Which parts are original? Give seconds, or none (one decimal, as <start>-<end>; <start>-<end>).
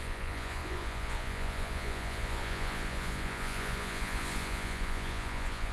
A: none